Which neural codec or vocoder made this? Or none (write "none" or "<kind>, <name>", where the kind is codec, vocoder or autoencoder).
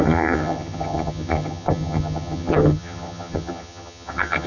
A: vocoder, HiFi-GAN